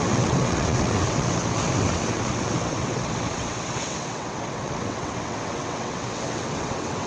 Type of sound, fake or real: fake